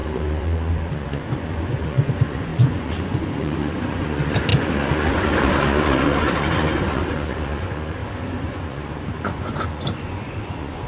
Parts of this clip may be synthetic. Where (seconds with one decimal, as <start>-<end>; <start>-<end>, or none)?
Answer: 0.0-10.9